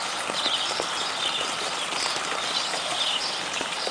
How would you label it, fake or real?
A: real